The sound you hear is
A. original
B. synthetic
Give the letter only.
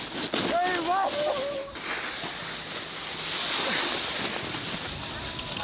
A